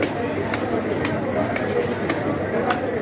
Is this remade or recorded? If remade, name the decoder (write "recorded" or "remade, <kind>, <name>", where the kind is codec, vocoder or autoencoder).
recorded